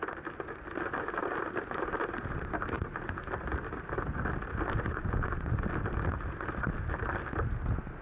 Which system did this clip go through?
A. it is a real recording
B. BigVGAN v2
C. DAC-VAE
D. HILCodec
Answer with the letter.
A